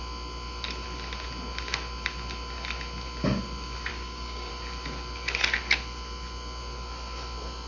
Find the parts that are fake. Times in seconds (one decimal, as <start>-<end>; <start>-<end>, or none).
3.9-4.5